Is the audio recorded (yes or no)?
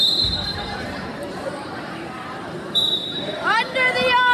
no